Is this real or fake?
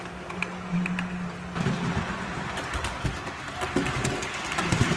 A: real